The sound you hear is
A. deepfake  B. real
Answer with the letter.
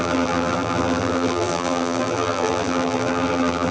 A